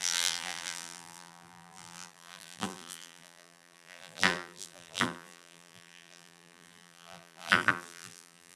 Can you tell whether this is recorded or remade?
remade